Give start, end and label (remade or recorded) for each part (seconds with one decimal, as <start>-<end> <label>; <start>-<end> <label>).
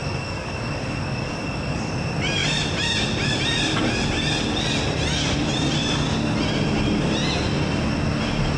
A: 0.0-1.9 remade; 1.9-8.6 recorded